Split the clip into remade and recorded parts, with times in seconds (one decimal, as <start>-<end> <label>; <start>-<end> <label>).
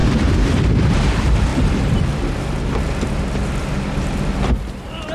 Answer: 0.0-0.5 recorded; 0.5-1.5 remade; 1.5-4.6 recorded; 4.6-5.1 remade